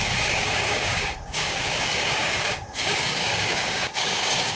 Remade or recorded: remade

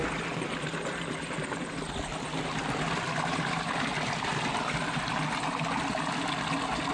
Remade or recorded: recorded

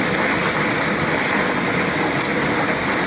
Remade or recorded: remade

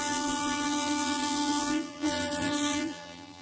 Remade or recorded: remade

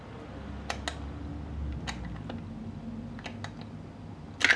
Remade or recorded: recorded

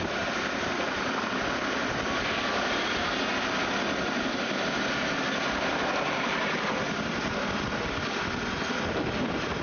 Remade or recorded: recorded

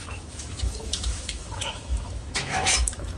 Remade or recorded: remade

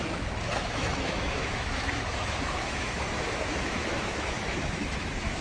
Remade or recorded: remade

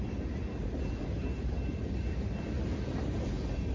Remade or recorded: remade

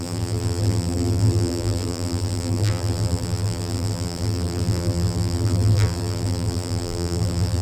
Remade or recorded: remade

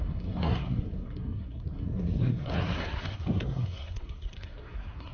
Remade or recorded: remade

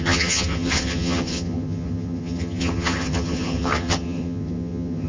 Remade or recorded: remade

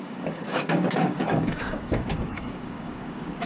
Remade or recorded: remade